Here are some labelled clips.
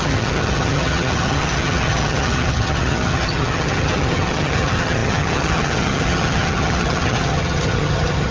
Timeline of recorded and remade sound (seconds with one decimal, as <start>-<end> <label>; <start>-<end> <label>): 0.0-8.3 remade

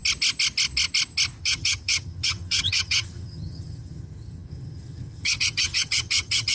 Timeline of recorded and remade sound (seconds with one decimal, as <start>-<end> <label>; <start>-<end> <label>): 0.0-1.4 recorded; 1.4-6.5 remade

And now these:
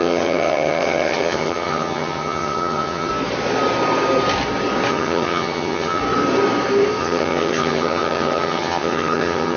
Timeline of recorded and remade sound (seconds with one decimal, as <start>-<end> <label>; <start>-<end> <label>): 0.0-3.1 remade; 3.1-4.9 recorded; 4.9-6.0 remade; 6.0-7.0 recorded; 7.0-9.6 remade